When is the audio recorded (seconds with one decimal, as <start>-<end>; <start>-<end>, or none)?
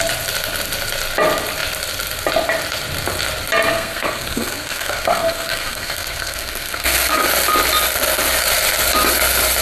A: 0.0-3.7; 7.2-9.6